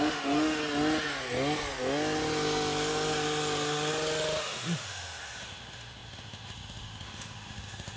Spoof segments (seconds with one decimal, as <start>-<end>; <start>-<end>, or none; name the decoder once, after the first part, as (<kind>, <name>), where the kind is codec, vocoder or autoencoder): 0.0-0.6 (autoencoder, DAC-VAE); 4.4-8.0